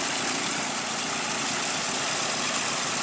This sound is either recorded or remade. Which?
recorded